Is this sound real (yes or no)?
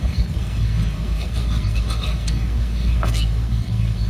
no